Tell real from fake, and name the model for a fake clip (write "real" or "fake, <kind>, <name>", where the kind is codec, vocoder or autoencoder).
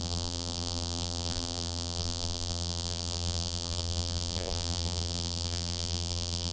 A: fake, vocoder, BigVGAN v2